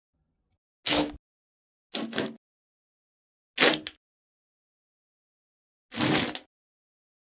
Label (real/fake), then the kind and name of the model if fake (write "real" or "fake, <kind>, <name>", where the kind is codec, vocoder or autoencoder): real